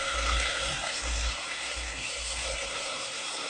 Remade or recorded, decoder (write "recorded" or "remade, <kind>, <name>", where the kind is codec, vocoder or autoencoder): remade, codec, SNAC